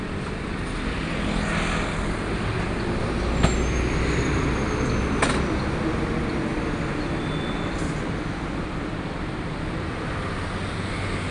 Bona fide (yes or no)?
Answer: yes